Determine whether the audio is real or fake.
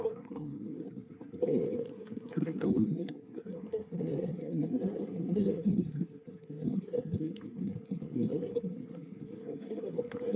fake